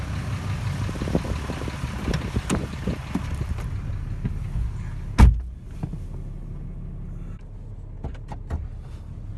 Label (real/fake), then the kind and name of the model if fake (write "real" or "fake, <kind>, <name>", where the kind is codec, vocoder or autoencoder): real